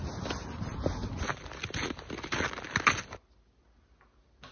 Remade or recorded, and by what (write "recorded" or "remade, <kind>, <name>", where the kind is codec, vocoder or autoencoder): recorded